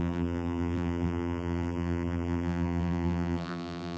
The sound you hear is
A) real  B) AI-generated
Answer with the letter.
B